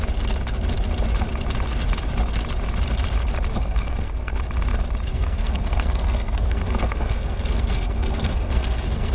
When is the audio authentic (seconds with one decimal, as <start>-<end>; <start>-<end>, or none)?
0.0-3.5; 4.4-5.1